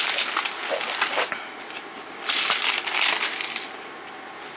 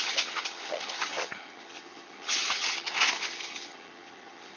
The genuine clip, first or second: first